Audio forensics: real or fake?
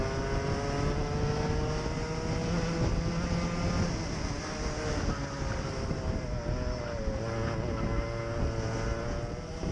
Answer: real